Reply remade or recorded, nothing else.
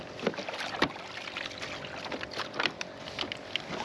recorded